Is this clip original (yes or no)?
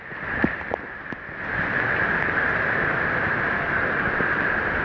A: yes